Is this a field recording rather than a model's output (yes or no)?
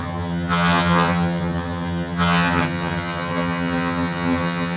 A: no